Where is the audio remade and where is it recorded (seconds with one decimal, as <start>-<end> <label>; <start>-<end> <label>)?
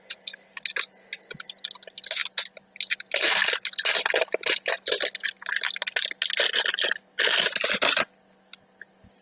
0.0-9.2 recorded